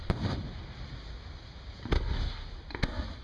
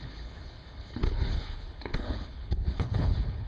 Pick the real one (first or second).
first